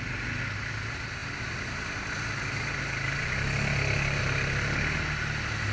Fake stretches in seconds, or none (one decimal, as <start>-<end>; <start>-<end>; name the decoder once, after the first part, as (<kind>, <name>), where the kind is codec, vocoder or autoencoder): none